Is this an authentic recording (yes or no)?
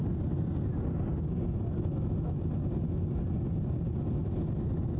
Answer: yes